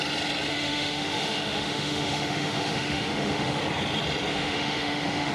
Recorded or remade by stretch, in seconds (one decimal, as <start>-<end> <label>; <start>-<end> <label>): 0.0-0.5 recorded; 0.5-3.6 remade; 3.6-4.3 recorded; 4.3-5.3 remade